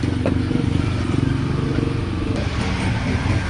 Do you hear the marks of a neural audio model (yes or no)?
no